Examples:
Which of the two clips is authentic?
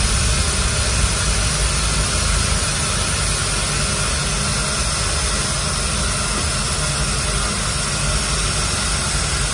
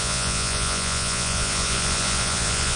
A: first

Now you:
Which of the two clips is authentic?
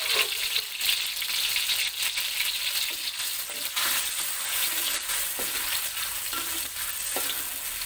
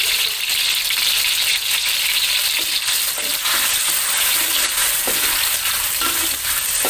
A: first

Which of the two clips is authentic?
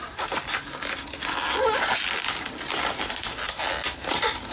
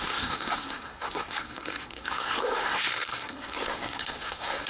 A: first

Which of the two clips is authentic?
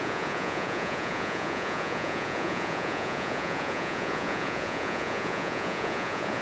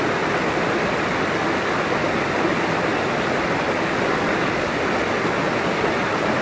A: second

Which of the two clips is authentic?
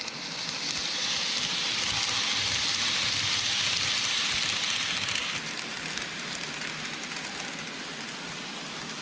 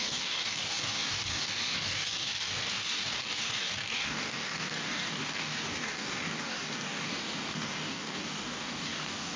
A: first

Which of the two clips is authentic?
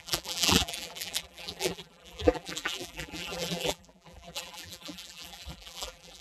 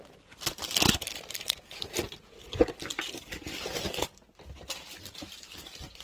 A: second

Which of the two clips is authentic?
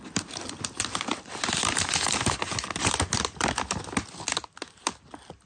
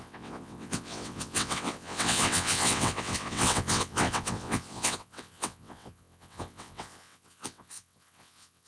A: first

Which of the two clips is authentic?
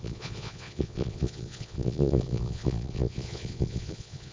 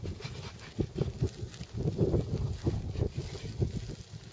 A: second